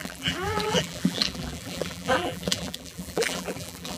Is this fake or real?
fake